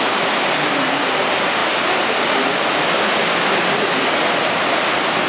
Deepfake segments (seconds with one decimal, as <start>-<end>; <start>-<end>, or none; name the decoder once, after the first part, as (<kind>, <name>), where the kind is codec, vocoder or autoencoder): none